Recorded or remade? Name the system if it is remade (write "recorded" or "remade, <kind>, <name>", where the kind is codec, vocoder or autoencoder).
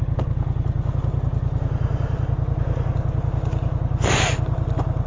recorded